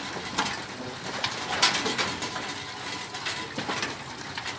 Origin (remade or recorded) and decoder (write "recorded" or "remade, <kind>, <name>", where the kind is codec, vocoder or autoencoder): recorded